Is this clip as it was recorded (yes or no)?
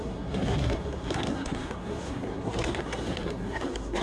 no